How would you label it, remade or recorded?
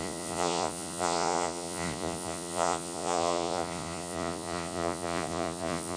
remade